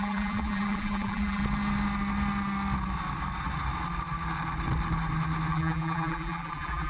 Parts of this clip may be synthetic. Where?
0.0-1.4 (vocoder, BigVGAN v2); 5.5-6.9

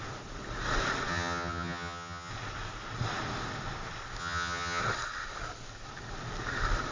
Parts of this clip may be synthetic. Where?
1.1-2.3 (vocoder, HiFi-GAN); 4.2-4.8

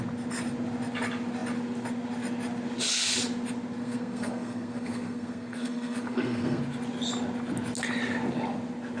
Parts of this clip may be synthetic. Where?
3.8-6.6 (codec, SNAC)

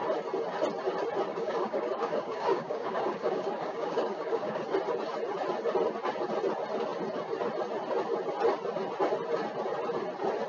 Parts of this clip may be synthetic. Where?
1.3-4.6 (codec, DAC)